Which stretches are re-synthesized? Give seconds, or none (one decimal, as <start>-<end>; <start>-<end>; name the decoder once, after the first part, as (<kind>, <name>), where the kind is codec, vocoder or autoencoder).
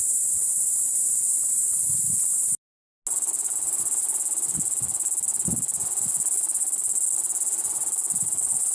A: none